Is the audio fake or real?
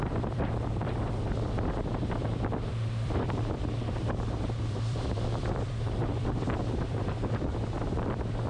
fake